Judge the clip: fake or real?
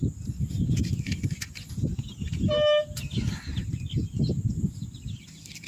real